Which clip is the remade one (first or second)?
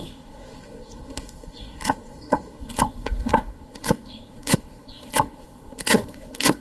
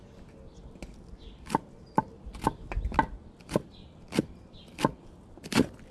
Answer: first